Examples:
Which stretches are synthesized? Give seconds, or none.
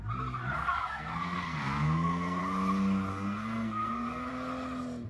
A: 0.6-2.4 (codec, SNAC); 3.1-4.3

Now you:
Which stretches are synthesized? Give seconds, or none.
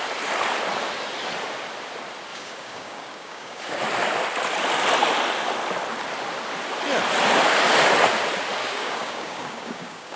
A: 2.3-3.8 (codec, DAC); 8.6-10.2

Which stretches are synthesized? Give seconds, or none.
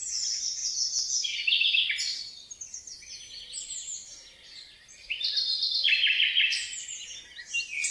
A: none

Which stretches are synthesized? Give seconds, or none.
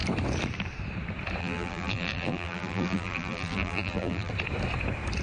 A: 1.4-4.3 (vocoder, BigVGAN v2)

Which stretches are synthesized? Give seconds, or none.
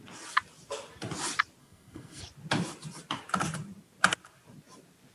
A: 1.6-2.2 (codec, SNAC)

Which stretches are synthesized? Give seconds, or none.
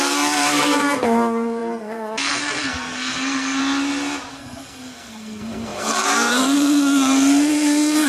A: 0.0-3.6 (codec, SNAC); 4.3-8.1